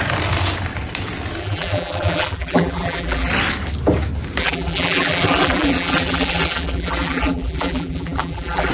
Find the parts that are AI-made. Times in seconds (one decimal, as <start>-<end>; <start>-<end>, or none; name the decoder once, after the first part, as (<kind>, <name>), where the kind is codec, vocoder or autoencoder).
1.4-3.3 (vocoder, BigVGAN v2); 4.4-8.7